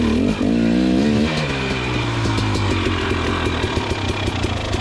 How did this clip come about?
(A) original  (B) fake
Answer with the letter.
A